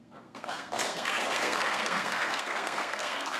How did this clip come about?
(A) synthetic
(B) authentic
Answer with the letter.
A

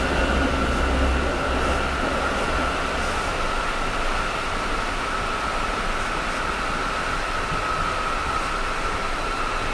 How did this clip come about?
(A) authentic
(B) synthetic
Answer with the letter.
A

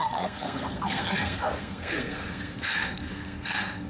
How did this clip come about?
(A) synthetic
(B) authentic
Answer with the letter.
A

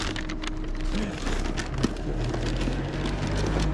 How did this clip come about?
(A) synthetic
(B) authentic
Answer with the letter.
B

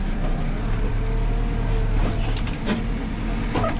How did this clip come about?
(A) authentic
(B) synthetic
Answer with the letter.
A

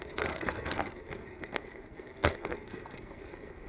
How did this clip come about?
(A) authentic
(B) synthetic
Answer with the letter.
B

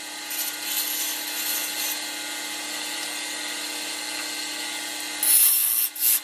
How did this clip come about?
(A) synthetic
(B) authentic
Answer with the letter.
B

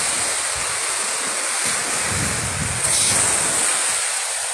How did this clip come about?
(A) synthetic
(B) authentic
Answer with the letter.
B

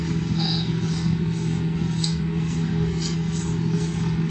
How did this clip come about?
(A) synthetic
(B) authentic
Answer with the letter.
A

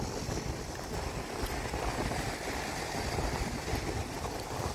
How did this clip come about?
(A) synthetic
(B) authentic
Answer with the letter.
B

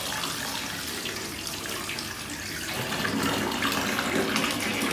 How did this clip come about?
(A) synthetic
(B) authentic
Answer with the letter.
B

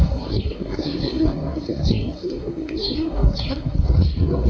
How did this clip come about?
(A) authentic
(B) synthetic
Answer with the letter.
B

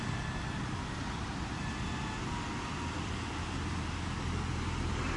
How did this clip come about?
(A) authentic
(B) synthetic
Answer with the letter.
A